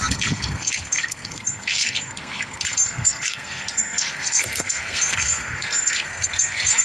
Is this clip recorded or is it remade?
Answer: remade